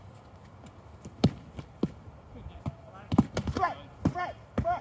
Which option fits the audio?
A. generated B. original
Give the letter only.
B